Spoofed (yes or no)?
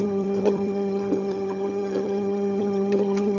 yes